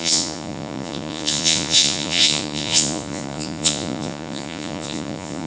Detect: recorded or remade remade